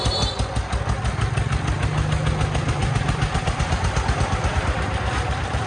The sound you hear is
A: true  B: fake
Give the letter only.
A